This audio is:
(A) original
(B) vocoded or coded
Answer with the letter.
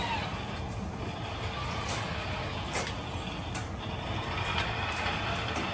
A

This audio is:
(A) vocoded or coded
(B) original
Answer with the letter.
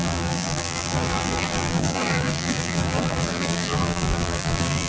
A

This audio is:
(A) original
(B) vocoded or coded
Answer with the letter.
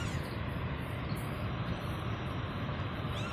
B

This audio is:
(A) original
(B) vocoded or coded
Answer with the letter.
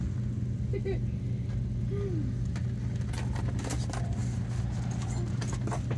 A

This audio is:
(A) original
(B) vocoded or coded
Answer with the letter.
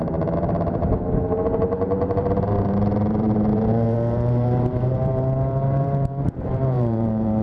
B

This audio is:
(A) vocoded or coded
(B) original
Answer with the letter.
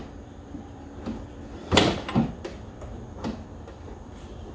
A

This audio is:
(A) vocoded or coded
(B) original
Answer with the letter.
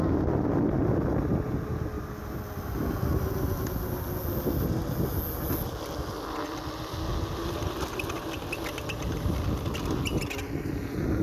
B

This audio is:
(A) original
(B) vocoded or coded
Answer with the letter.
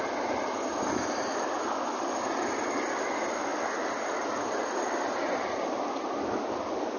A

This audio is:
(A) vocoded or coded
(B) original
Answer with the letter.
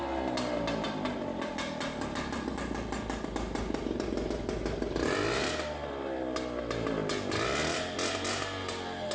B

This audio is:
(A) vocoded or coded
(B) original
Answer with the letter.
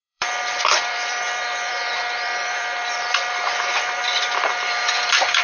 A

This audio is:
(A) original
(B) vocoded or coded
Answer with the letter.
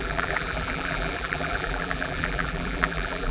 B